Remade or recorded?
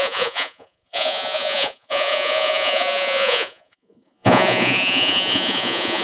remade